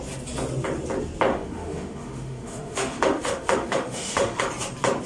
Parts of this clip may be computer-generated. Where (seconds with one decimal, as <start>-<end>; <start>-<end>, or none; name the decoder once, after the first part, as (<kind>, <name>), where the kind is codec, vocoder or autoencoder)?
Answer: 1.3-4.4 (autoencoder, DAC-VAE)